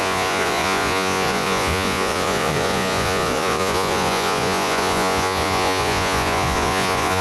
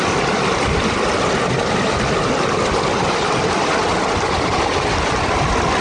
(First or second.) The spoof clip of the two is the first